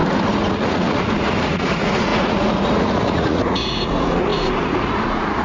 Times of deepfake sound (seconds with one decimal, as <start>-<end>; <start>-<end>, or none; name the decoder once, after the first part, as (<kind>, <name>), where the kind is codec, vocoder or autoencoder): 0.0-5.4 (vocoder, Vocos)

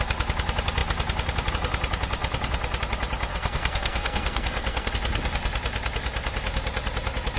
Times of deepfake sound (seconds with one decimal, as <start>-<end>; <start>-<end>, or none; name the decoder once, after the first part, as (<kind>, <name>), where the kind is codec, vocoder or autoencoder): 3.3-4.9 (codec, SNAC)

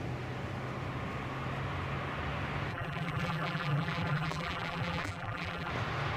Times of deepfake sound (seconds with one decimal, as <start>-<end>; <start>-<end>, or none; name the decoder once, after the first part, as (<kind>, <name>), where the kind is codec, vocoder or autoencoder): 2.7-5.7 (vocoder, BigVGAN v2)

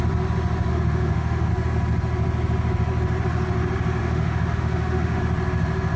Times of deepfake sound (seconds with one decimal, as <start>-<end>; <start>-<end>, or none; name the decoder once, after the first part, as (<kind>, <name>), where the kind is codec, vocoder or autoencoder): 0.7-1.5 (autoencoder, DAC-VAE); 4.0-5.2

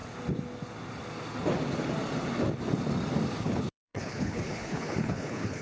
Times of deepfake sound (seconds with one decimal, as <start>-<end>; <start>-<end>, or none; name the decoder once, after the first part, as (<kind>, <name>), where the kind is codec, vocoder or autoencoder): 3.4-5.6 (codec, HILCodec)

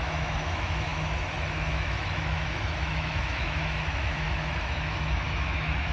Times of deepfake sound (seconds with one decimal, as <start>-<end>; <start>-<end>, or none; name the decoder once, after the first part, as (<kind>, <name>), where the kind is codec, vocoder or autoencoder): 0.0-5.9 (autoencoder, DAC-VAE)

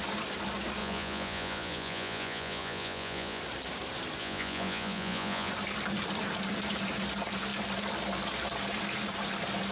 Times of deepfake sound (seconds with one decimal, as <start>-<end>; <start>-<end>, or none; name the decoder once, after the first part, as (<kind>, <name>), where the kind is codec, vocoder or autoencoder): 0.8-3.4 (vocoder, Vocos); 4.2-5.5

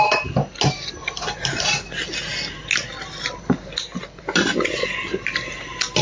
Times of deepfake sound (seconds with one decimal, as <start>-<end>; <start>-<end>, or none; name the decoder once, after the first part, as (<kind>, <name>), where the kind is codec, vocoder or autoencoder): none